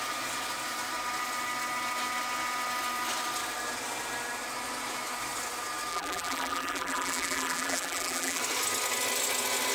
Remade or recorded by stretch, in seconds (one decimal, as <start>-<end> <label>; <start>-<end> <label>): 0.0-5.9 recorded; 5.9-8.4 remade; 8.4-9.7 recorded